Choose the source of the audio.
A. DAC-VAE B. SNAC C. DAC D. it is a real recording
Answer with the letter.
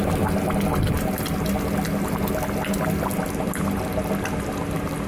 D